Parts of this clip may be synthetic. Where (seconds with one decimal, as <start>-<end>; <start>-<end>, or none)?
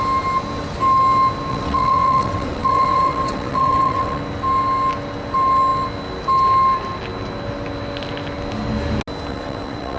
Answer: 1.5-4.2; 9.3-10.0